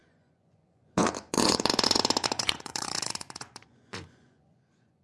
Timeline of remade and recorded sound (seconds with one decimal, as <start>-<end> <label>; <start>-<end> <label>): 0.0-5.0 remade